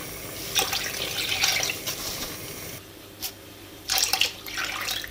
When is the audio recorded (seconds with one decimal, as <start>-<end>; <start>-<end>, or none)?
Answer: 0.0-1.5; 4.6-5.1